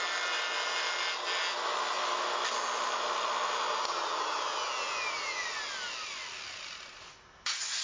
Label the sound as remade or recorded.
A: recorded